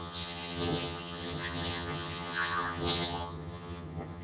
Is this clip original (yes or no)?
no